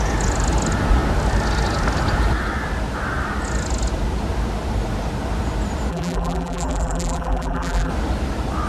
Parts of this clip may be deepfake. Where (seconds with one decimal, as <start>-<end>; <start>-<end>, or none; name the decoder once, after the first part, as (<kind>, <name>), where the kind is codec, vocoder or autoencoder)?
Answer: 5.9-7.9 (vocoder, BigVGAN v2)